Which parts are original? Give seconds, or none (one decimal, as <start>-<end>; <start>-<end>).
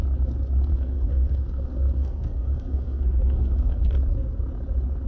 0.0-0.7; 3.8-5.1